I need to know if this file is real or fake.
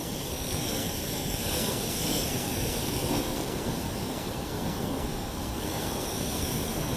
fake